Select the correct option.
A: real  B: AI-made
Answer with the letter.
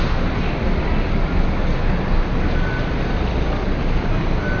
A